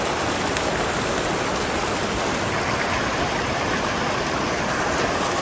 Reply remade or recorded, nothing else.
recorded